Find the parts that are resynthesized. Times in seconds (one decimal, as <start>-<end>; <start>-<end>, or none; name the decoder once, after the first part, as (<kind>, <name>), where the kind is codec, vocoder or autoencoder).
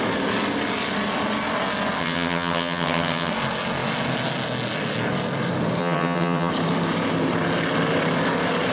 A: 2.0-3.3 (vocoder, HiFi-GAN); 5.8-6.5